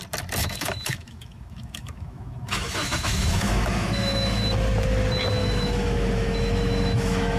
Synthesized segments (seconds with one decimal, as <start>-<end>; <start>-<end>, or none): 0.4-4.5; 5.4-7.4